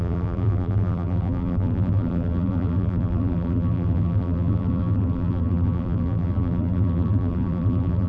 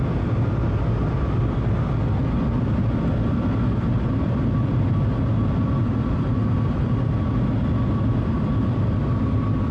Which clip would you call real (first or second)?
second